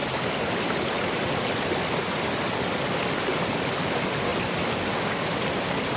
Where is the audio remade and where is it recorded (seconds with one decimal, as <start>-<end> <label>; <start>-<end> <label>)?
0.0-6.0 recorded